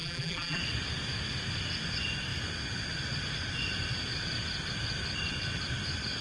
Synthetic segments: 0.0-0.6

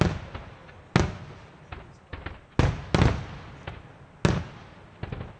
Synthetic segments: none

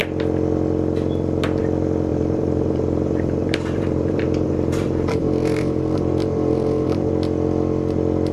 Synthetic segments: 2.1-7.1

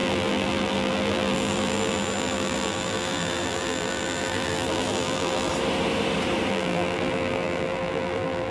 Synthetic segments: 0.0-5.5; 6.5-8.5

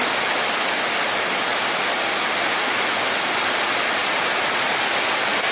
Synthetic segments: none

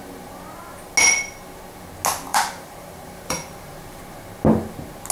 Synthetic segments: 2.3-4.0

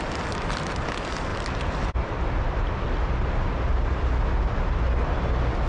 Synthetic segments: none

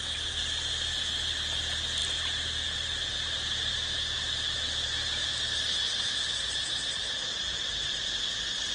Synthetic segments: 2.0-6.3